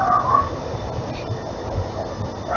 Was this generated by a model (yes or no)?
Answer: no